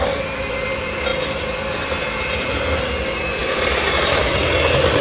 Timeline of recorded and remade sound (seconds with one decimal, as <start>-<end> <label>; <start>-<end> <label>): 0.0-5.0 recorded